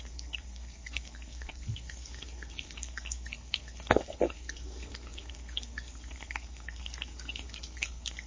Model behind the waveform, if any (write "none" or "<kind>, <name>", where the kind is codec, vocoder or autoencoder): codec, SNAC